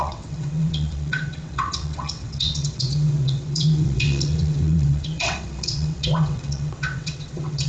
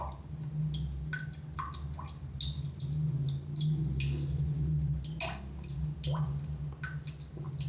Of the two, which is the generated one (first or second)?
first